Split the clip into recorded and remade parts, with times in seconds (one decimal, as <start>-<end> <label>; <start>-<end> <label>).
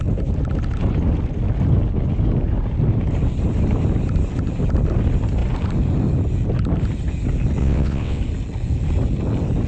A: 0.0-7.6 recorded; 7.6-8.2 remade; 8.2-9.7 recorded